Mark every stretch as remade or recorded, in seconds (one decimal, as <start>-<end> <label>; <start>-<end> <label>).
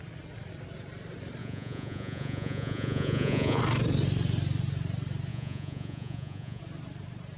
0.0-1.4 recorded; 1.4-3.6 remade; 3.6-5.3 recorded; 5.3-6.6 remade; 6.6-7.4 recorded